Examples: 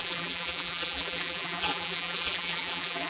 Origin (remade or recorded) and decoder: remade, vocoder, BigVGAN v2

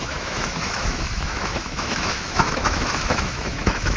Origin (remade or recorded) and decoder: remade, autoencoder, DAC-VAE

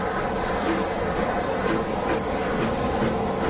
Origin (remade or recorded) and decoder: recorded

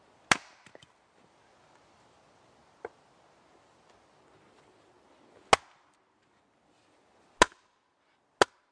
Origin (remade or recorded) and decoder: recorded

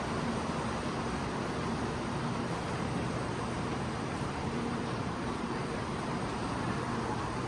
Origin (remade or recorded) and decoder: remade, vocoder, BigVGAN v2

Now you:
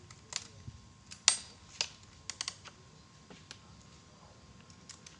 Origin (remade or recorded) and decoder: recorded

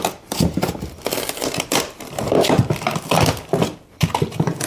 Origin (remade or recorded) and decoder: recorded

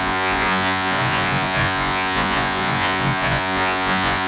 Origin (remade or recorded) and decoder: remade, vocoder, Vocos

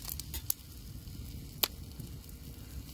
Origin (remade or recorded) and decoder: recorded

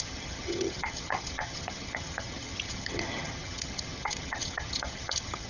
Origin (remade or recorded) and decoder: remade, vocoder, HiFi-GAN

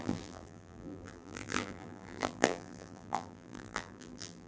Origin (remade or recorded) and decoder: remade, vocoder, BigVGAN v2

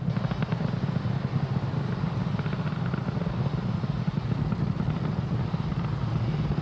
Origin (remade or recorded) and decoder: recorded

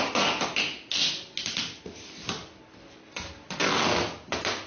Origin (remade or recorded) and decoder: recorded